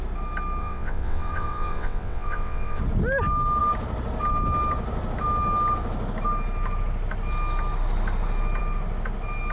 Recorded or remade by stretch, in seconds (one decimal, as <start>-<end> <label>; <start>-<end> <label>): 0.0-0.6 recorded; 0.6-2.8 remade; 2.8-9.5 recorded